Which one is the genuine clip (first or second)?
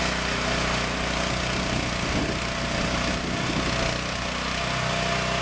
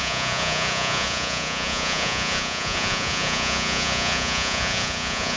first